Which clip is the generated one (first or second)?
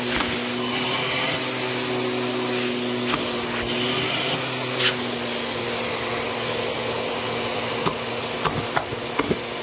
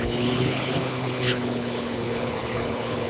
second